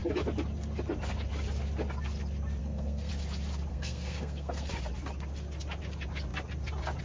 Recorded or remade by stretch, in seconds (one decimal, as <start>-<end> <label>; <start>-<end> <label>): 0.0-2.6 recorded; 2.6-3.1 remade; 3.1-3.7 recorded; 3.7-4.7 remade; 4.7-7.0 recorded